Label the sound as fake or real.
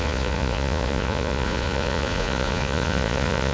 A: fake